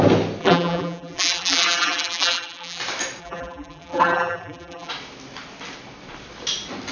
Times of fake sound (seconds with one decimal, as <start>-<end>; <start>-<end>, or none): 0.4-2.8; 3.2-4.9